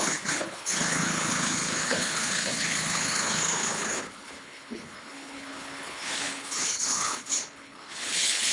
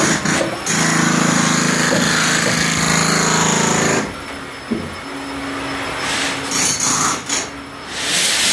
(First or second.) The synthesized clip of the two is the first